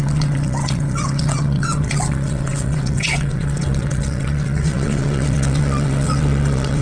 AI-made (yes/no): yes